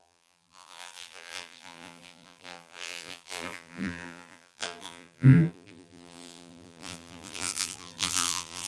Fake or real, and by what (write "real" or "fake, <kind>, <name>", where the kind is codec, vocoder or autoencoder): fake, vocoder, BigVGAN v2